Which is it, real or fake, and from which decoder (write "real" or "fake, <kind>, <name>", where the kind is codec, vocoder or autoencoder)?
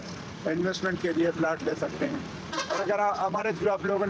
fake, vocoder, Vocos